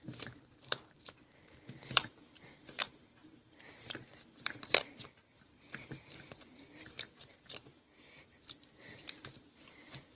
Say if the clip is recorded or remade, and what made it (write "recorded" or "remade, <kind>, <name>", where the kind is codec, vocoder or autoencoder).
remade, vocoder, BigVGAN v2